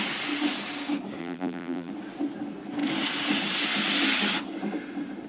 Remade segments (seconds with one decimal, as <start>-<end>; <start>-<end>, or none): 1.2-1.9